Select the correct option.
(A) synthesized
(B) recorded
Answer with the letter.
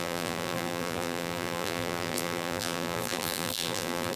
A